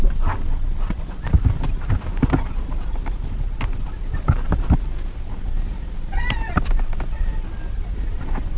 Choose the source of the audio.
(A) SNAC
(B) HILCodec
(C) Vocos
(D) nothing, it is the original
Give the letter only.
D